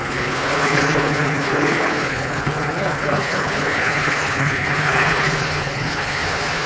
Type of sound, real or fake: fake